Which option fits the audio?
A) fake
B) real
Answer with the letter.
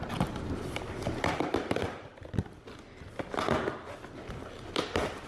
A